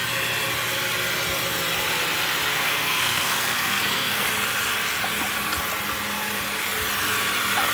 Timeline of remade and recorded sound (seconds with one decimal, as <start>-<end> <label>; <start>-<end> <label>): 0.0-2.5 recorded; 2.5-4.3 remade; 4.3-7.7 recorded